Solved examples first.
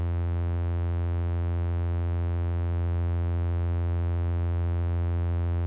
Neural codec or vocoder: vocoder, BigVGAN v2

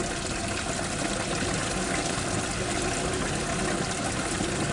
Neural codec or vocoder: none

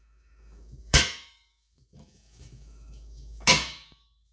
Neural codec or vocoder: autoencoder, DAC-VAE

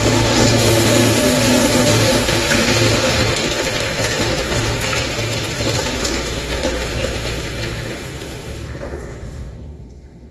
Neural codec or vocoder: autoencoder, DAC-VAE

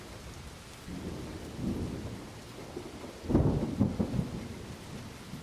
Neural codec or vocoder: none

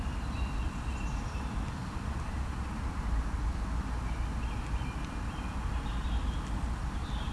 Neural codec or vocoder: none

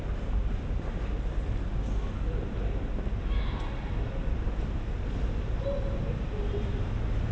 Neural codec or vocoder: none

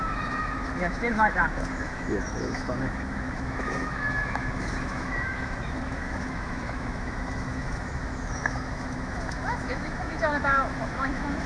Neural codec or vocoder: autoencoder, DAC-VAE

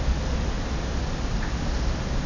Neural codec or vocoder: none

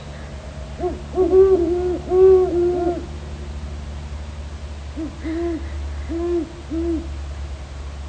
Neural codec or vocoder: none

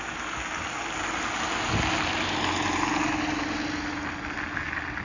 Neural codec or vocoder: none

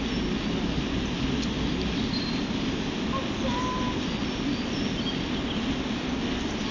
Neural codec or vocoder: none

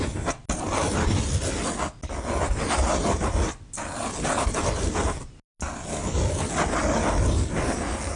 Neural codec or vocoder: none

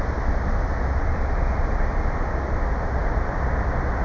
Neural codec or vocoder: none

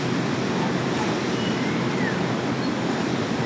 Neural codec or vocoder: vocoder, BigVGAN v2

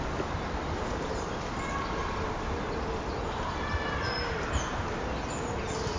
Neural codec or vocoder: none